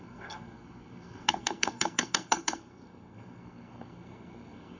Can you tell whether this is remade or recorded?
remade